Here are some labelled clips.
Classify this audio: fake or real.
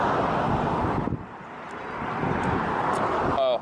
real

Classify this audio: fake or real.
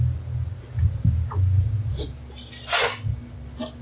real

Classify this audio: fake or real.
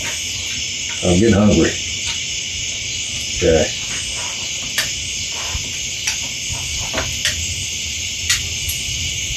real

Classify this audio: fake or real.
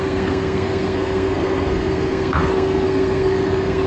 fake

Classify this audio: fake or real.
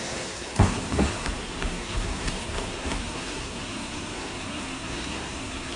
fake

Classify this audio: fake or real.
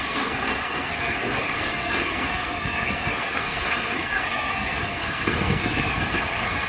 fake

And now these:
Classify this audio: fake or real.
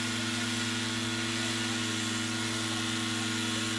real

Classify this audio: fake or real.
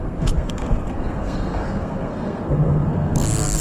fake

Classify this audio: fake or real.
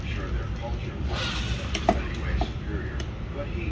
real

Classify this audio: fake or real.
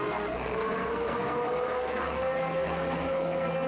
fake